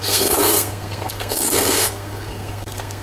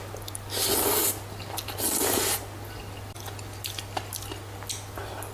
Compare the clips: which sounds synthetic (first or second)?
first